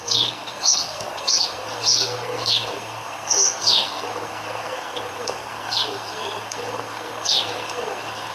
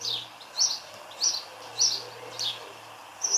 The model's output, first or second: first